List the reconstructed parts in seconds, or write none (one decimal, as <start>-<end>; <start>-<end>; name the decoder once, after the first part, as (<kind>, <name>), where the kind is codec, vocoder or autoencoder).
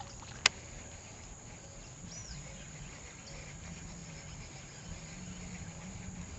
2.2-2.7 (vocoder, Vocos)